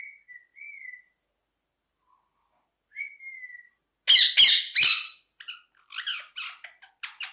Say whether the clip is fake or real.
real